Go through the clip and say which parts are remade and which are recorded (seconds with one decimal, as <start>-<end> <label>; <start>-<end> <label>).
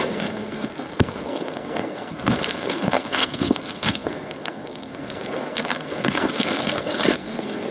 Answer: 0.0-7.7 remade